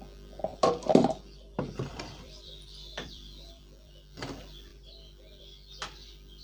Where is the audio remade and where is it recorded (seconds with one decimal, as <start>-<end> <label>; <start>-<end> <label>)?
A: 0.0-0.5 recorded; 0.5-4.3 remade; 4.3-6.4 recorded